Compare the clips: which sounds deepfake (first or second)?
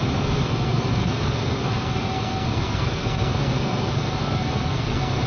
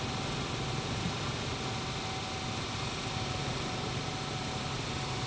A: first